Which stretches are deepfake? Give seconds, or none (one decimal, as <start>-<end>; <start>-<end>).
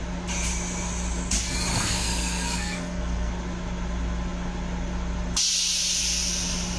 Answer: 1.7-3.3